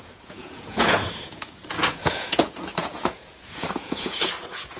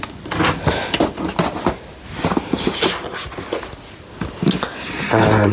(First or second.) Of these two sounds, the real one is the second